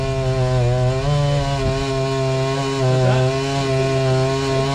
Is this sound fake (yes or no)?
no